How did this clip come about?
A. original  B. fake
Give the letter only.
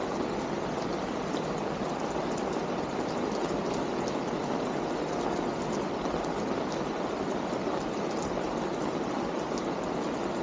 A